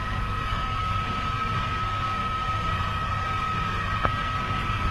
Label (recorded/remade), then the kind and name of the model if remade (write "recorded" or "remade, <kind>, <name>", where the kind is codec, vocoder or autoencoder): remade, codec, SNAC